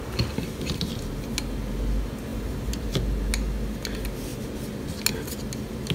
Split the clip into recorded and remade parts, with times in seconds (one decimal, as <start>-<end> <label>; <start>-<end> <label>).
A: 0.0-2.3 recorded; 2.3-2.9 remade; 2.9-5.9 recorded